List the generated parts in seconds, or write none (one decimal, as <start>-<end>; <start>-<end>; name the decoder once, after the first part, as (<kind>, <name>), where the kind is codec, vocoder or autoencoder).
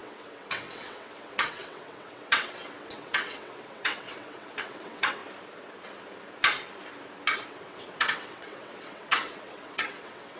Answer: 0.0-5.2 (vocoder, WaveNeXt); 7.5-10.4